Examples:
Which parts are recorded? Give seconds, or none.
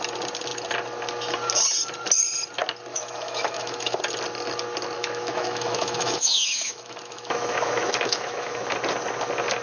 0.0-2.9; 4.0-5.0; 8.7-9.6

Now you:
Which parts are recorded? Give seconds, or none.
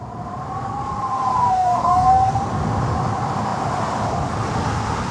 0.0-1.3; 2.3-5.1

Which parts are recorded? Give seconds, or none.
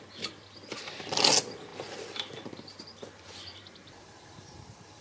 0.0-1.7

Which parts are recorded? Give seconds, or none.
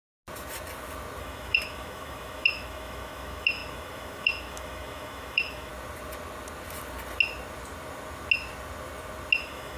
0.0-1.2; 5.7-9.4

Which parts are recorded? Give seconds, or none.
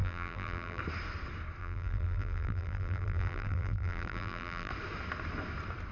0.8-1.6; 4.7-5.9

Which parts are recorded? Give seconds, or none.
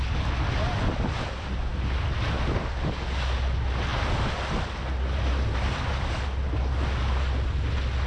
0.0-8.1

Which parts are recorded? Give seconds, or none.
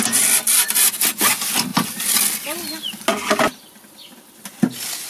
0.0-5.1